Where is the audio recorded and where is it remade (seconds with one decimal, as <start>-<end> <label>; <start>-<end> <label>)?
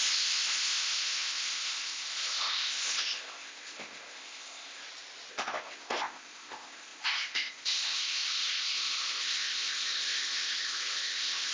0.0-4.8 remade; 4.8-5.3 recorded; 5.3-11.5 remade